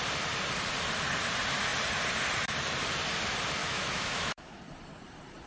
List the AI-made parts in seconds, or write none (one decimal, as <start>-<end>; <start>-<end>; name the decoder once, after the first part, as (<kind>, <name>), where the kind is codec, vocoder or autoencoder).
3.6-4.6 (autoencoder, DAC-VAE)